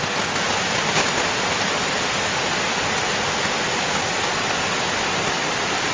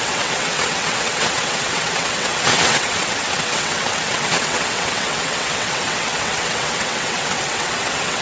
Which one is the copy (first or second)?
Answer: second